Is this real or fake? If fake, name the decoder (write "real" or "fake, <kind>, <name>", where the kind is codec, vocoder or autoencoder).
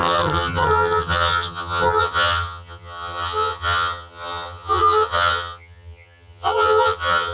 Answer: fake, vocoder, HiFi-GAN